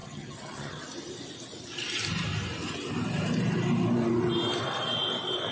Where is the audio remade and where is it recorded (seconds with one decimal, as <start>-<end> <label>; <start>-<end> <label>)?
0.0-0.8 remade; 0.8-5.5 recorded